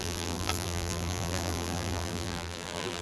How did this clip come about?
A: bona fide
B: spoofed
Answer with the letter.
B